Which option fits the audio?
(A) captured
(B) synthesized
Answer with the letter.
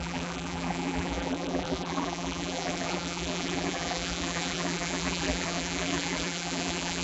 B